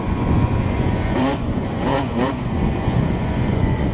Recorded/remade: remade